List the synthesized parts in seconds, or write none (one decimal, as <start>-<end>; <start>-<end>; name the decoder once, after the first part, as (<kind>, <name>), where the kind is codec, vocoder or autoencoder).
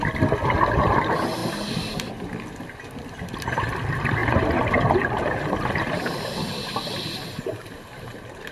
4.2-6.0 (vocoder, BigVGAN v2)